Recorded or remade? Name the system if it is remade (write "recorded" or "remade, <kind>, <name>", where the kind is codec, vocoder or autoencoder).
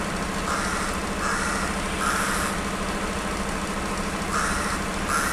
recorded